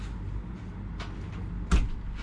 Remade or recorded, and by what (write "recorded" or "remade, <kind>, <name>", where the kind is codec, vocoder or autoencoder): recorded